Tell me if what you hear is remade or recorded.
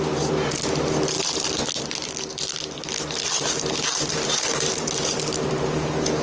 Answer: remade